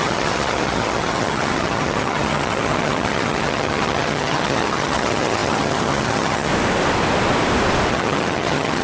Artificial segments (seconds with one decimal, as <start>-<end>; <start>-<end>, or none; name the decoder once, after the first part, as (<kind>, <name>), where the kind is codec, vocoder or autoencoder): 0.0-6.5 (vocoder, HiFi-GAN); 7.9-8.8